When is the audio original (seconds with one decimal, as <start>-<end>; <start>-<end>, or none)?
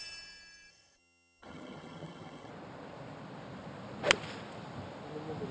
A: 0.0-0.7; 2.5-5.5